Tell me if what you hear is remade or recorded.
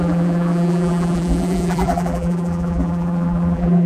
remade